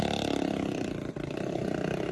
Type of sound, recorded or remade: recorded